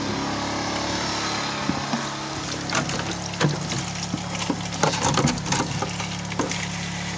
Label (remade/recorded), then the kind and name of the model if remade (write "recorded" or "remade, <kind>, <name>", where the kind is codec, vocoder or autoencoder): recorded